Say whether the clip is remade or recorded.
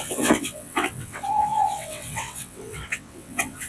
remade